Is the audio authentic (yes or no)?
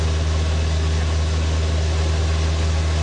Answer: yes